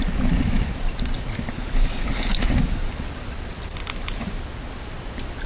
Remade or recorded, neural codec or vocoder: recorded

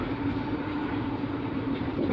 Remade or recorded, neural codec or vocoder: remade, vocoder, BigVGAN v2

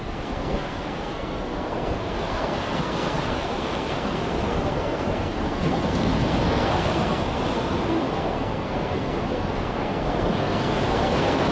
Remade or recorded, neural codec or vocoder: remade, codec, SNAC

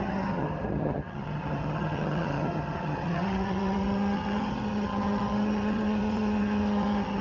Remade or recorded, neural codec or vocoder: remade, vocoder, HiFi-GAN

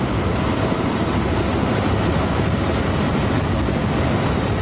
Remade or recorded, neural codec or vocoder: recorded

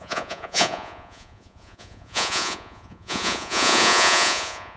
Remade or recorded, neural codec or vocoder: remade, vocoder, Vocos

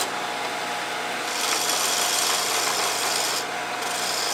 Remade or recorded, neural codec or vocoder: recorded